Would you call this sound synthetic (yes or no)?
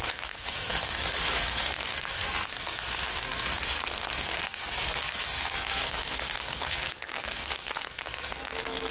yes